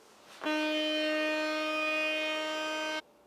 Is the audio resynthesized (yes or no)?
no